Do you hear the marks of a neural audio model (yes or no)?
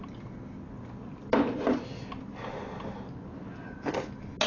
no